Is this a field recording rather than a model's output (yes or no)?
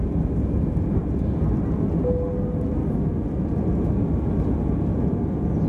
yes